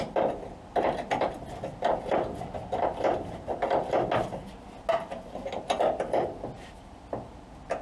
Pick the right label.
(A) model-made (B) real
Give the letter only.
B